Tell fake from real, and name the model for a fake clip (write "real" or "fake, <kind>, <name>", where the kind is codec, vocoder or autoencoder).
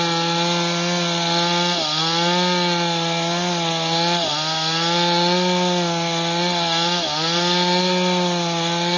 real